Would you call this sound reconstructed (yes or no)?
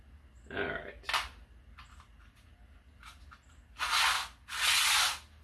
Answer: no